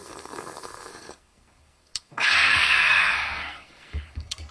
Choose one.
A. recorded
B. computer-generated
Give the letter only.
B